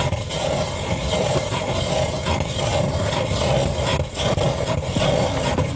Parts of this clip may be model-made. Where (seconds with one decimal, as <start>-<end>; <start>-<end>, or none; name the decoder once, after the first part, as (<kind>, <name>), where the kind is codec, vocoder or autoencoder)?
1.0-2.2 (vocoder, BigVGAN v2); 2.7-3.2